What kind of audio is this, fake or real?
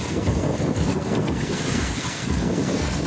fake